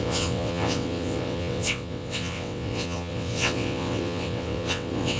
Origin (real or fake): fake